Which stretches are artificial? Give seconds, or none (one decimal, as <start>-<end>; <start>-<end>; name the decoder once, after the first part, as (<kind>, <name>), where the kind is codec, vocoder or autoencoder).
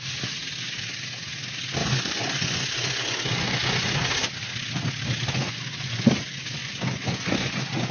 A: 1.8-3.9 (vocoder, Vocos); 5.4-6.1; 6.6-7.9